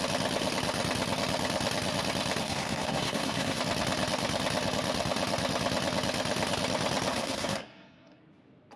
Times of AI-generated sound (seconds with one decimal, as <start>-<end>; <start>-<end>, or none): 2.4-3.6; 7.1-8.2